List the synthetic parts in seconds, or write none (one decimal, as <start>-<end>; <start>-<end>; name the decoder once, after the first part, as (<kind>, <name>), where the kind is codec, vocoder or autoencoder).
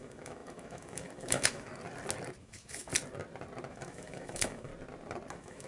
0.0-1.7 (autoencoder, DAC-VAE); 2.4-2.9; 3.7-4.7; 5.3-5.7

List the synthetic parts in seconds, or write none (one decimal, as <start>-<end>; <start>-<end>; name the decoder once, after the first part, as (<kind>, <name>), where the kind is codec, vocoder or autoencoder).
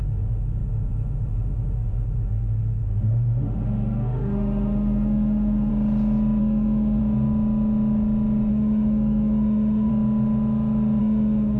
0.0-5.7 (autoencoder, DAC-VAE); 6.4-7.0; 8.5-9.9; 11.0-11.6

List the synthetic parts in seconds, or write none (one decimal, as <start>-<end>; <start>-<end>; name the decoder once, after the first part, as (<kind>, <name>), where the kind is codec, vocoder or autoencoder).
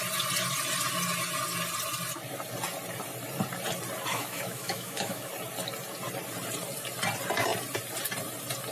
4.1-5.3 (autoencoder, DAC-VAE)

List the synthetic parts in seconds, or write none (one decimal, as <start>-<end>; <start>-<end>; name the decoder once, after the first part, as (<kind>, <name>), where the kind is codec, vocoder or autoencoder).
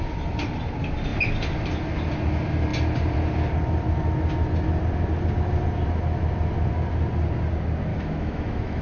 7.9-8.8 (autoencoder, DAC-VAE)